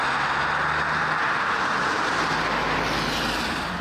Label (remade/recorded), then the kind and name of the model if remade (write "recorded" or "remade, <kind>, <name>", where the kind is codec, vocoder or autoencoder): recorded